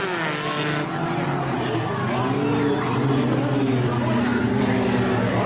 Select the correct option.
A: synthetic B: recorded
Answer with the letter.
B